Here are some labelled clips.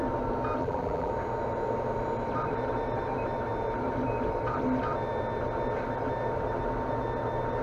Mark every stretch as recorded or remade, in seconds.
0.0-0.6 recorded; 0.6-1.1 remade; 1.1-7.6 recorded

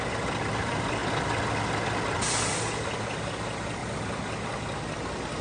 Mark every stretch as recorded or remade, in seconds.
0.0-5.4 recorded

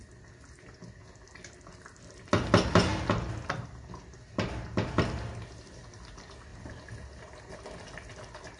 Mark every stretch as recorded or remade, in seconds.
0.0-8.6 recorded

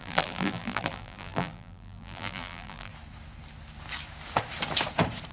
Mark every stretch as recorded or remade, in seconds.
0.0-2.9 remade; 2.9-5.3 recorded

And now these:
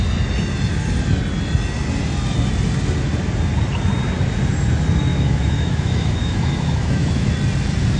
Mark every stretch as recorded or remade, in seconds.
0.0-5.1 recorded; 5.1-7.3 remade; 7.3-8.0 recorded

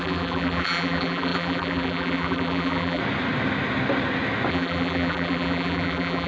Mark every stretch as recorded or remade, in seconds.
0.0-3.0 remade; 3.0-4.5 recorded; 4.5-6.3 remade

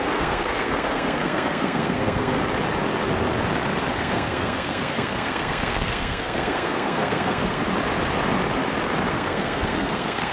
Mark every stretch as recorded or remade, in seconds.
0.0-2.4 remade; 2.4-3.9 recorded; 3.9-7.6 remade; 7.6-9.1 recorded; 9.1-10.3 remade

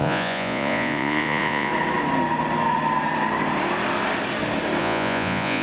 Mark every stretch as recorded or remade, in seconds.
0.0-1.7 remade; 1.7-4.8 recorded; 4.8-5.6 remade